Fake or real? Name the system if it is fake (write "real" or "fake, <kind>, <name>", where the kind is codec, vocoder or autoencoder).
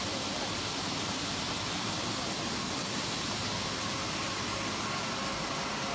real